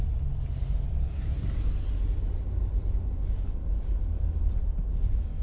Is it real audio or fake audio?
real